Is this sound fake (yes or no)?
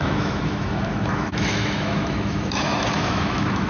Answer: yes